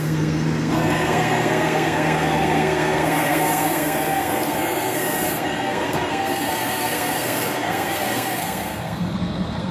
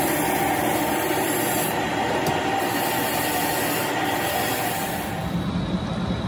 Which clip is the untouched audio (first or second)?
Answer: second